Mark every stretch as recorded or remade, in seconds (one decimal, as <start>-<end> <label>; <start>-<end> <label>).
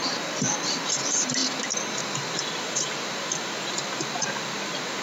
0.0-5.0 recorded